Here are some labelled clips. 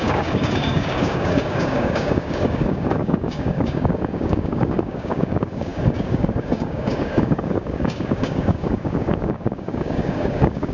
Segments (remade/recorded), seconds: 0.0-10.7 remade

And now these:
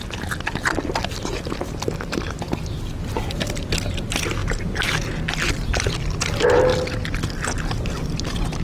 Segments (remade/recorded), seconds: 0.0-8.6 recorded

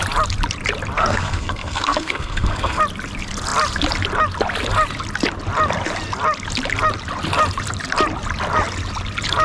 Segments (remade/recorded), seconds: 0.0-1.0 recorded; 1.0-2.8 remade; 2.8-9.4 recorded

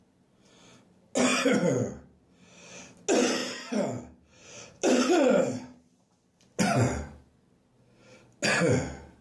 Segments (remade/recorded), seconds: 0.0-4.4 recorded; 4.4-6.2 remade; 6.2-9.2 recorded

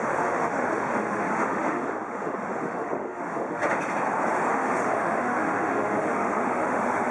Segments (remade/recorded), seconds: 0.0-3.6 remade; 3.6-4.5 recorded; 4.5-7.1 remade

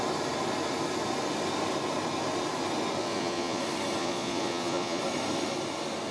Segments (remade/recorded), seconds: 0.0-3.0 recorded; 3.0-3.6 remade; 3.6-4.0 recorded; 4.0-5.0 remade; 5.0-6.1 recorded